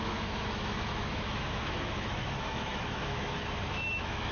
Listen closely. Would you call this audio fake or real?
fake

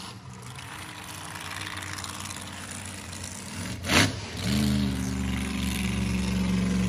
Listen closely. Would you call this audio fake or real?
real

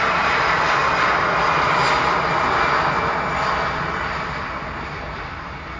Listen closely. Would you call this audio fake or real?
real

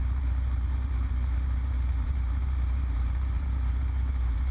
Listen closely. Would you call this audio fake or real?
fake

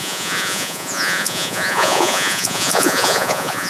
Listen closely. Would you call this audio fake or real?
fake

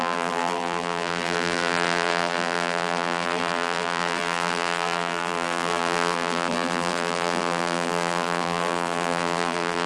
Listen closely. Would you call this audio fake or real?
fake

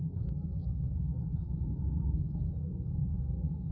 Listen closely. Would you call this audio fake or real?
fake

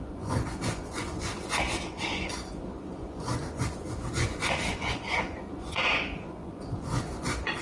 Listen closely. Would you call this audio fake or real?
fake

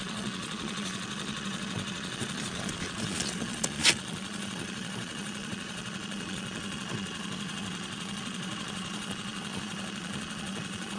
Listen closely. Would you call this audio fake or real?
fake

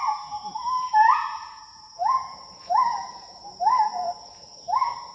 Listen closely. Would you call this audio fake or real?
fake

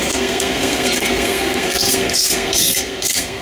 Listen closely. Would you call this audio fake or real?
fake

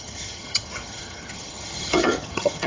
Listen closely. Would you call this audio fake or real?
fake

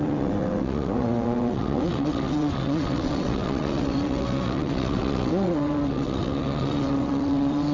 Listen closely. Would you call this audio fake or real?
fake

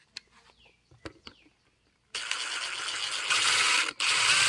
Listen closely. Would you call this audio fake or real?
real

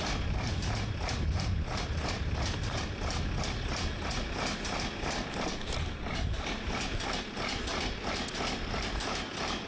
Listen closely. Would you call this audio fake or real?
real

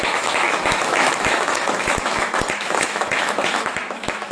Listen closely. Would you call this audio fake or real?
fake